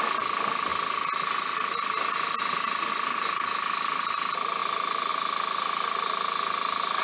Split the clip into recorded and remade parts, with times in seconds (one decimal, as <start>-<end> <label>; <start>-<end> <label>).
0.0-7.0 recorded